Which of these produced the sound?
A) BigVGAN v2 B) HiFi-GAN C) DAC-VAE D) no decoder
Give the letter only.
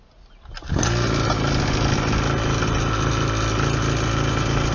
D